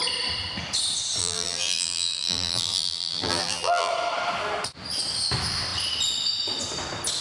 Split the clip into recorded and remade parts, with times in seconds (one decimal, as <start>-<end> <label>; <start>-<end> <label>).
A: 0.0-1.2 recorded; 1.2-3.9 remade; 3.9-7.2 recorded